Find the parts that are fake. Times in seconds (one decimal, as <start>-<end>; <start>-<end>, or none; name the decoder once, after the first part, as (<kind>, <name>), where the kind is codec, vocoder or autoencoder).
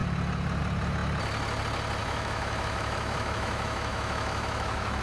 2.0-5.0 (autoencoder, DAC-VAE)